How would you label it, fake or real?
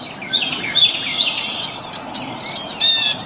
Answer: real